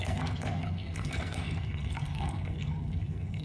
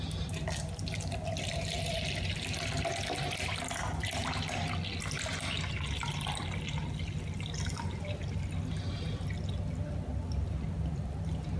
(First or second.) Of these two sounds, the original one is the second